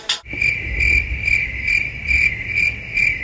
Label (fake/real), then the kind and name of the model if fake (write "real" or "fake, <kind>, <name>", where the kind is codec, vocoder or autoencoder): real